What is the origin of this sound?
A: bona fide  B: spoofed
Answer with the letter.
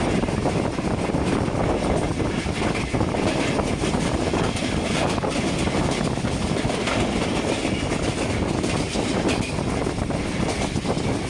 A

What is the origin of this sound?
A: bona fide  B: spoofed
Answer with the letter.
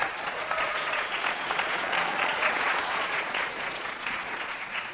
B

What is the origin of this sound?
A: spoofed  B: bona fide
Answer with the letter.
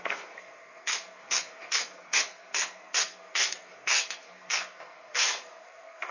A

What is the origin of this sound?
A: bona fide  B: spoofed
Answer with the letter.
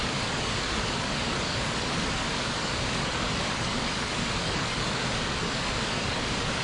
B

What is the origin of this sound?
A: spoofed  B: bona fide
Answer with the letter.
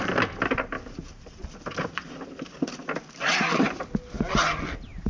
B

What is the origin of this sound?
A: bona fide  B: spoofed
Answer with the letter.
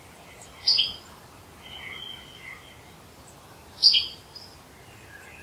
A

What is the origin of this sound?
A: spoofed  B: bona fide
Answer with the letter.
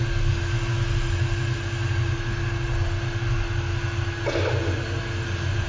B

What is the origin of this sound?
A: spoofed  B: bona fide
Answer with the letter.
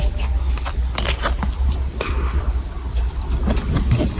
B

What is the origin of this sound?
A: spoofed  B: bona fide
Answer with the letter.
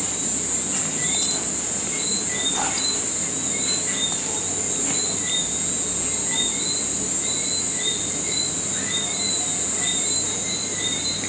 B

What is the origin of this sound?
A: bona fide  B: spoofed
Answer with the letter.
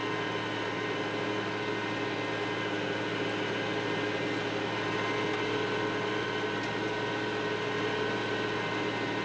A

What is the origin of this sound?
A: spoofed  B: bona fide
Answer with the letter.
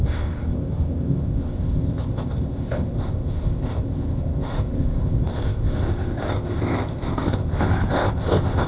A